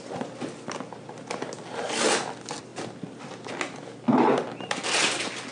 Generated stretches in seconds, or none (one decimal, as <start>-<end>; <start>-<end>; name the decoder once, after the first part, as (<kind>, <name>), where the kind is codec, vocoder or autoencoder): none